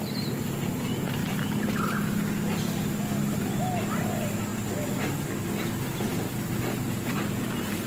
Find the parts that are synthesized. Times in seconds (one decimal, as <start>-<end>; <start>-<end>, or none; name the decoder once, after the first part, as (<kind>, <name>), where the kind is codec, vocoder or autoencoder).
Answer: 1.2-2.0 (vocoder, BigVGAN v2)